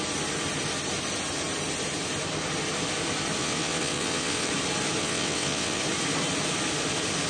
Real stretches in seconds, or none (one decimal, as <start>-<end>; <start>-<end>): 0.0-3.4; 4.5-5.0; 5.8-7.3